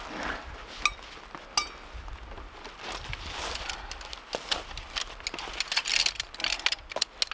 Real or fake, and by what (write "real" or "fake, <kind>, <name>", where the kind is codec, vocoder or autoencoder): real